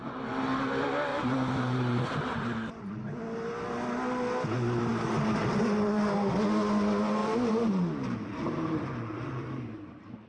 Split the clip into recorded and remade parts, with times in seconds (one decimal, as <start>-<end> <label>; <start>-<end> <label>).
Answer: 0.0-1.1 recorded; 1.1-2.8 remade; 2.8-7.2 recorded; 7.2-10.3 remade